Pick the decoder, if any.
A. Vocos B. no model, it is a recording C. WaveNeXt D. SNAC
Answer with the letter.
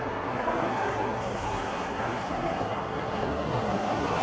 D